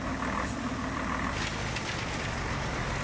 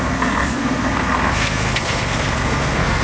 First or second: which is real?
first